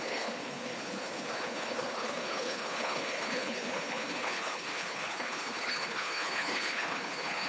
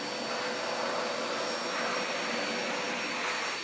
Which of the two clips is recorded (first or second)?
second